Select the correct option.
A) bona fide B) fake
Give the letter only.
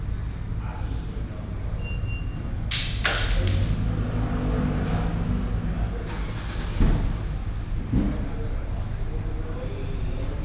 A